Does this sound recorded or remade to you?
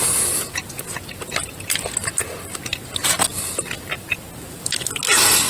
recorded